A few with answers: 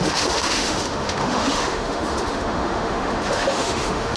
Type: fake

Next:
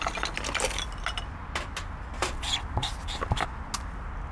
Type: real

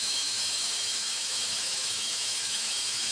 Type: fake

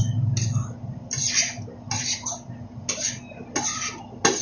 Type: real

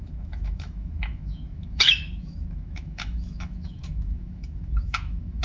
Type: fake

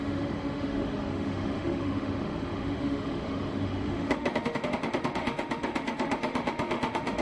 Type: fake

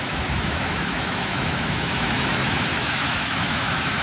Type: fake